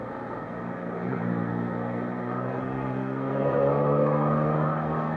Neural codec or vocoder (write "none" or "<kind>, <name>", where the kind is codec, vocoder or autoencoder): codec, SNAC